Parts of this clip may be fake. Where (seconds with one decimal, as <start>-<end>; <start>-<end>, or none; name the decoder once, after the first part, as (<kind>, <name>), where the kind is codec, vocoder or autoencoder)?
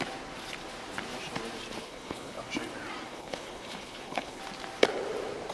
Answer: 1.8-2.4 (codec, HILCodec); 3.1-4.4